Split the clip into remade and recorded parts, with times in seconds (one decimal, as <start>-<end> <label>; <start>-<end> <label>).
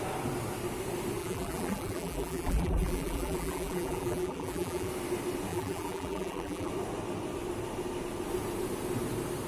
0.0-1.2 recorded; 1.2-4.9 remade; 4.9-5.5 recorded; 5.5-6.7 remade; 6.7-9.5 recorded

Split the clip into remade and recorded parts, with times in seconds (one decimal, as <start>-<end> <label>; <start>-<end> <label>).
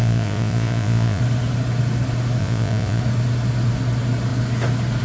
0.0-1.2 remade; 1.2-2.4 recorded; 2.4-3.0 remade; 3.0-5.0 recorded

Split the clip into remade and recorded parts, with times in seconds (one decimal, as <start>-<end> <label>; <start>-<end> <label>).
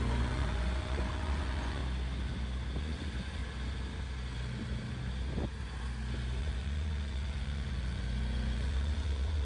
0.0-1.8 remade; 1.8-2.8 recorded; 2.8-3.4 remade; 3.4-6.4 recorded; 6.4-9.4 remade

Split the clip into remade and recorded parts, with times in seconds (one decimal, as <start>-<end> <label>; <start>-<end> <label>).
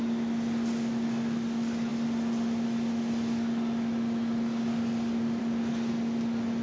0.0-6.6 recorded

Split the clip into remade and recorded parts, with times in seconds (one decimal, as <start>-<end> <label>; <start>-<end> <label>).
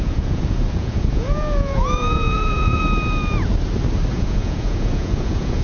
0.0-2.8 remade; 2.8-4.1 recorded; 4.1-5.6 remade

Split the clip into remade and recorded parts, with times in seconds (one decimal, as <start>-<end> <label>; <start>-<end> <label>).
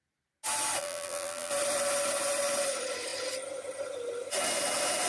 0.0-0.8 recorded; 0.8-1.5 remade; 1.5-5.1 recorded